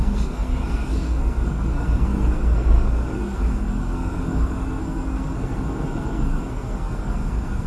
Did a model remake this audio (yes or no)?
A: yes